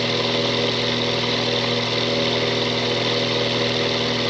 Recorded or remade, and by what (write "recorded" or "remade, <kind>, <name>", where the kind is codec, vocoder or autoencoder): recorded